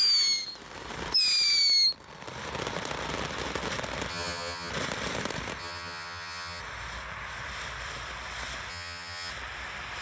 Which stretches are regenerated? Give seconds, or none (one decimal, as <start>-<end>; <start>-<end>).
4.1-4.7; 5.6-6.6; 8.7-9.3